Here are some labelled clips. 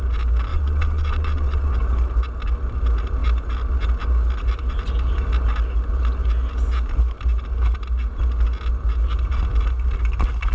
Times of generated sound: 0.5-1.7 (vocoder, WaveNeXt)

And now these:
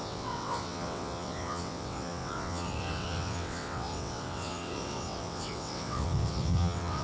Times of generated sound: 0.0-7.0 (vocoder, WaveNeXt)

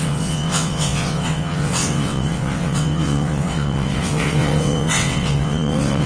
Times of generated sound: 0.0-6.1 (vocoder, WaveNeXt)

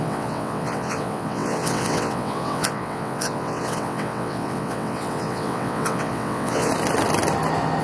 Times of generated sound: 0.0-6.7 (vocoder, WaveNeXt)